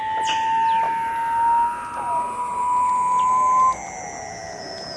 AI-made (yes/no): no